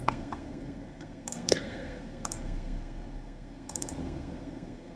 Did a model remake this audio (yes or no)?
yes